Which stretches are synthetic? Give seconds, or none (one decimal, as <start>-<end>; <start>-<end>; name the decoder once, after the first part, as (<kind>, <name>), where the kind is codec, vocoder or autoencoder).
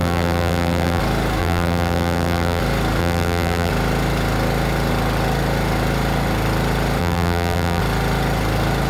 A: 0.0-1.0 (vocoder, BigVGAN v2); 1.4-2.6; 3.0-3.7; 7.0-7.8